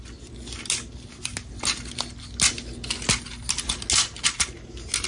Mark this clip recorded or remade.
recorded